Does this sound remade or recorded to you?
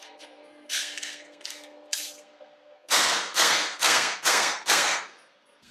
remade